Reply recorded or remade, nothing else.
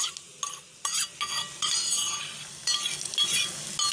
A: recorded